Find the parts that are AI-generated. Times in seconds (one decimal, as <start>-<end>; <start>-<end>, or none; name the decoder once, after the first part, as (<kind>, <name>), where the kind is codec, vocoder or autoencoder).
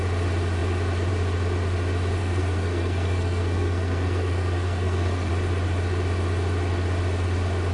2.2-5.3 (codec, SNAC)